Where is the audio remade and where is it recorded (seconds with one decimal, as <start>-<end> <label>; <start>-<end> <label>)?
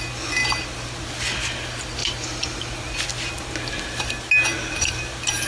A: 0.0-5.5 recorded